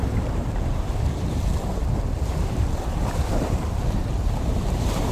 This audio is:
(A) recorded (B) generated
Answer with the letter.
B